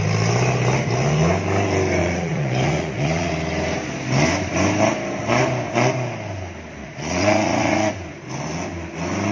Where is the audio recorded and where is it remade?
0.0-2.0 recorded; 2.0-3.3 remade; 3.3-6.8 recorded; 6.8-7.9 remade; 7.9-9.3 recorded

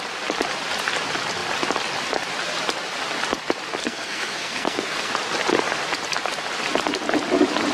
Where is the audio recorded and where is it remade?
0.0-3.8 recorded; 3.8-5.1 remade; 5.1-7.7 recorded

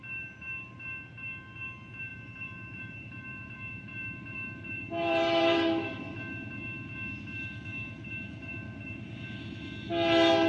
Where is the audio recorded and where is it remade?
0.0-2.1 recorded; 2.1-6.2 remade; 6.2-7.7 recorded; 7.7-9.1 remade; 9.1-10.5 recorded

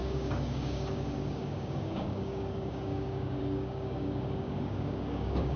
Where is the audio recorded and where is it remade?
0.0-5.6 remade